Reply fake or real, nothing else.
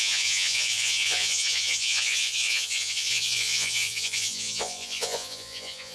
fake